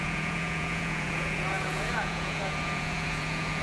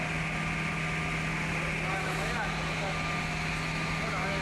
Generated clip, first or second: first